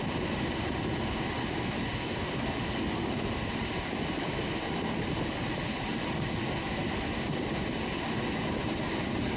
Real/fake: real